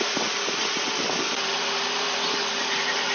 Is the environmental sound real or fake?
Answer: fake